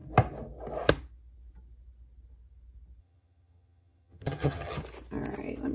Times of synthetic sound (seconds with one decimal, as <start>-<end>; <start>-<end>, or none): 3.0-4.8